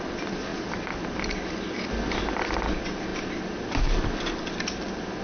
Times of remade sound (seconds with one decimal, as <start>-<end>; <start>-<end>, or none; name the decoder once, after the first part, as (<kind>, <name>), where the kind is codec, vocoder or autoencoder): none

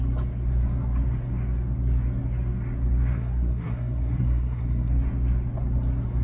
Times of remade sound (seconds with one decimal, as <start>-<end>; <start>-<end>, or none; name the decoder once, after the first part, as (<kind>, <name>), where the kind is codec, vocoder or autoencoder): 3.1-4.9 (codec, SNAC)

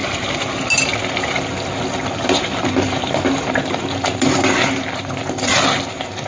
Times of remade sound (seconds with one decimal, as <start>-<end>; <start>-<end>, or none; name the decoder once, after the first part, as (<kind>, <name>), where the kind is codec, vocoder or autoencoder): none

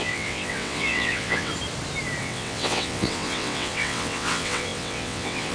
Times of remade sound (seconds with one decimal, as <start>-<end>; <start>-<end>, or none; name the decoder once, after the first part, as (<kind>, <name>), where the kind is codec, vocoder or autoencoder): 0.0-1.5 (vocoder, WaveNeXt); 2.2-5.5

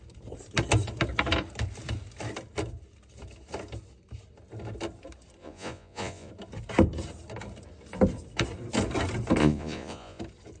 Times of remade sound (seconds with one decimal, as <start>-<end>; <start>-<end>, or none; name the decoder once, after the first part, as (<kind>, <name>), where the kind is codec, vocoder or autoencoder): 5.4-6.3 (vocoder, Vocos); 9.4-10.2

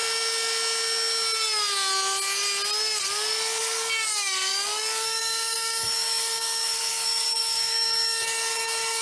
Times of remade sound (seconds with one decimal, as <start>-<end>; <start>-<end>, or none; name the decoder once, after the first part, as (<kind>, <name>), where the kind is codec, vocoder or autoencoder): 3.6-9.0 (codec, DAC)

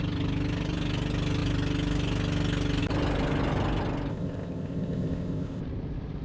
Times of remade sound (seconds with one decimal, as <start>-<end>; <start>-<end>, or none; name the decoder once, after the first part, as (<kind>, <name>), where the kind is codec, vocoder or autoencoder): 4.1-5.6 (codec, ZipCodec)